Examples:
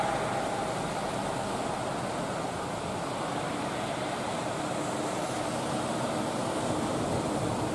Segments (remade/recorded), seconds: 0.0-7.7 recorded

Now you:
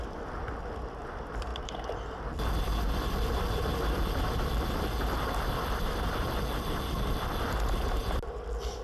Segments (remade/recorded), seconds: 0.0-8.8 remade

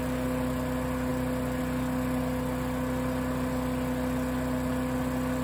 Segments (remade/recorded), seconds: 0.0-5.4 recorded

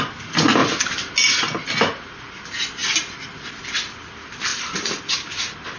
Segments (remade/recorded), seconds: 0.0-4.5 recorded; 4.5-5.0 remade; 5.0-5.8 recorded

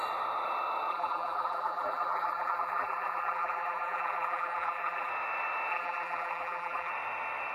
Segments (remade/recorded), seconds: 0.0-0.9 recorded; 0.9-5.1 remade; 5.1-5.7 recorded; 5.7-6.9 remade; 6.9-7.5 recorded

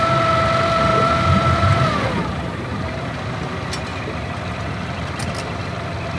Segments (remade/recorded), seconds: 0.0-0.9 recorded; 0.9-3.3 remade; 3.3-6.2 recorded

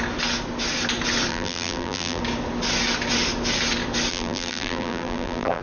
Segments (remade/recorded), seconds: 0.0-1.3 recorded; 1.3-2.2 remade; 2.2-4.1 recorded; 4.1-5.6 remade